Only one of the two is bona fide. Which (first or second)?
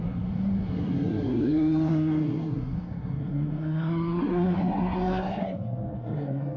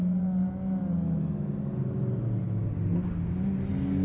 second